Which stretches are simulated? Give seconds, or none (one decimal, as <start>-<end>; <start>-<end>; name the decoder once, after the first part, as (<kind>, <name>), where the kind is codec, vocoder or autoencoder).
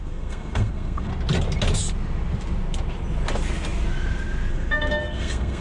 0.0-1.1 (codec, SNAC); 4.5-5.6